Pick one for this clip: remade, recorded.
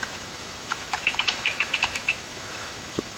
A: remade